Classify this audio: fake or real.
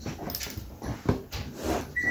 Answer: real